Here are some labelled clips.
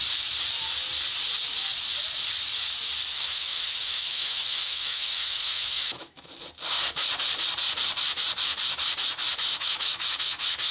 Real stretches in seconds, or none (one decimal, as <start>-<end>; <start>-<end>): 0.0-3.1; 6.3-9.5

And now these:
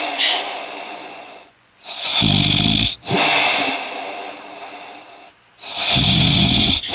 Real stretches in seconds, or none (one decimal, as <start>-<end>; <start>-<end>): 2.1-6.0

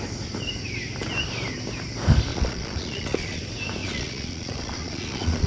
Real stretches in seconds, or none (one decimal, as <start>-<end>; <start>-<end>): 0.0-2.3; 3.4-3.8

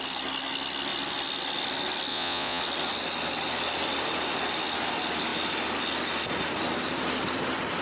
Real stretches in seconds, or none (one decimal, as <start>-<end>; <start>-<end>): 0.0-2.1; 2.6-7.8